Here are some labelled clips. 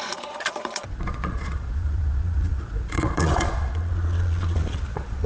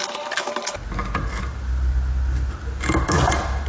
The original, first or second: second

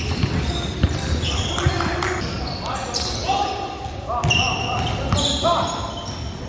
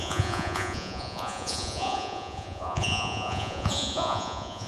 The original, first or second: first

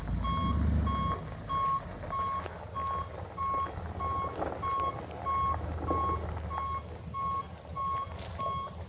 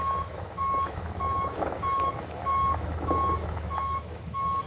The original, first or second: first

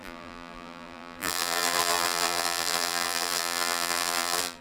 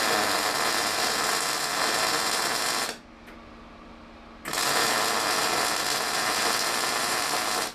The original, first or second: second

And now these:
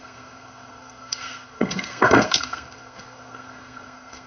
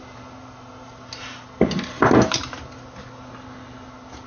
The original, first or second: second